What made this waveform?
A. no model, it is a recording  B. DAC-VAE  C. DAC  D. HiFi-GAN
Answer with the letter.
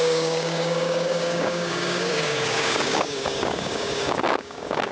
C